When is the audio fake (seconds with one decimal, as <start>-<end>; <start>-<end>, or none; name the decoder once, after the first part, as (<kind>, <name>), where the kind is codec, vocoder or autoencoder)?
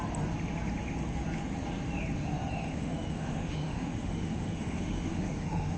2.5-5.8 (autoencoder, DAC-VAE)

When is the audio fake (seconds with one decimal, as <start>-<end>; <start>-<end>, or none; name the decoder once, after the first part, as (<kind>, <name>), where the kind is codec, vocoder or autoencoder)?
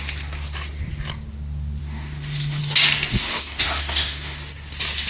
1.8-2.6 (autoencoder, DAC-VAE); 3.1-4.4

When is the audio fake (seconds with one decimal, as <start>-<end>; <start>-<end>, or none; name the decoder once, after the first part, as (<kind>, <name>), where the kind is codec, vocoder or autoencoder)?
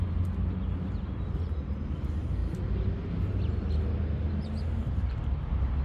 none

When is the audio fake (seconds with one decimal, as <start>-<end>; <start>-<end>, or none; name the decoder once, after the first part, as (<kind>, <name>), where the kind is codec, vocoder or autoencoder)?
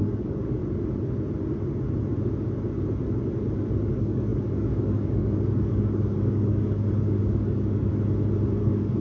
0.0-0.6 (codec, DAC); 3.9-7.9; 8.6-9.0